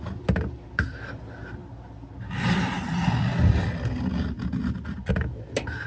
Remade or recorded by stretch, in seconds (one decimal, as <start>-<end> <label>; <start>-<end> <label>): 0.0-5.9 recorded